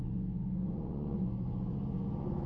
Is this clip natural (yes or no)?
no